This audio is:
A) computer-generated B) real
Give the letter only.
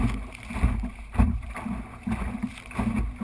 B